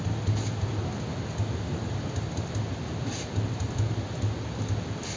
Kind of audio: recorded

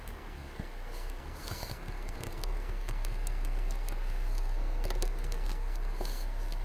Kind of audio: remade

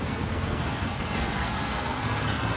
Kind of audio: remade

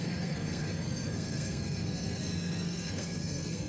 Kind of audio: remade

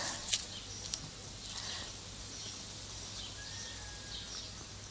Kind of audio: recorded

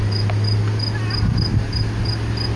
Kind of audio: recorded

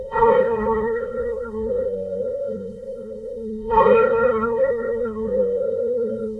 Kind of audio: remade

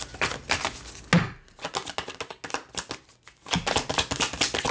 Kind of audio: recorded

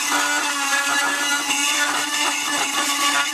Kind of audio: recorded